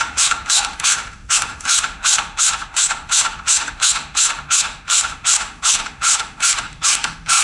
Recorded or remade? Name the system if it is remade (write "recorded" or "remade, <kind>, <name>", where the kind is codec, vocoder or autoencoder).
remade, autoencoder, DAC-VAE